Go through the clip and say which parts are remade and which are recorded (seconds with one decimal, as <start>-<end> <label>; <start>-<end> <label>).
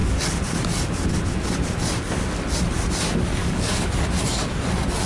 0.0-3.4 recorded; 3.4-3.9 remade; 3.9-5.1 recorded